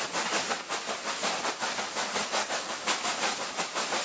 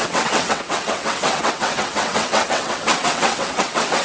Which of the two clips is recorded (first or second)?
first